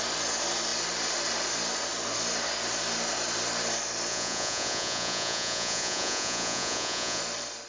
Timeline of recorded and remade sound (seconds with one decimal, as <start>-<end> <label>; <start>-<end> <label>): 0.0-4.1 recorded; 4.1-7.2 remade; 7.2-7.7 recorded